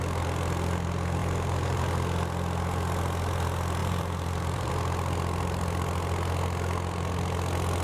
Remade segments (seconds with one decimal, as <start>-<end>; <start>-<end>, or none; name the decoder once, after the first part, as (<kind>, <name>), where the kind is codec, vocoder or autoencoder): 1.2-1.8 (vocoder, BigVGAN v2); 3.8-4.7